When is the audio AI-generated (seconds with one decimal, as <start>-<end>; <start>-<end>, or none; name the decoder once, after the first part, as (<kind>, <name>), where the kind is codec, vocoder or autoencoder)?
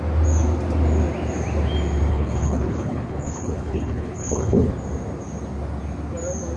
2.1-4.7 (codec, HILCodec)